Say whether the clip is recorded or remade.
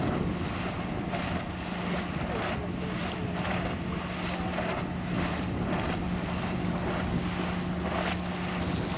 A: recorded